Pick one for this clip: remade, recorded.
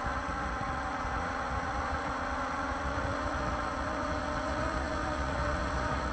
remade